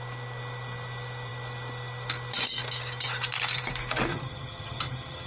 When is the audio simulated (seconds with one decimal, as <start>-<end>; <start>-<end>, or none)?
4.1-5.3